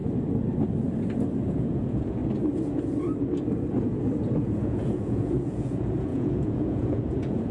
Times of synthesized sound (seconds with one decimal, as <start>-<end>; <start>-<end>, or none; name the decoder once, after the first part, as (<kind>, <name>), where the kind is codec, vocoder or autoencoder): 1.5-2.2 (vocoder, Vocos); 4.3-7.5